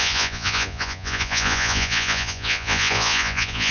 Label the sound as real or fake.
fake